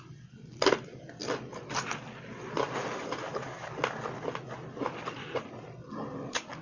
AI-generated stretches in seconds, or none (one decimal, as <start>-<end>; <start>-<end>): none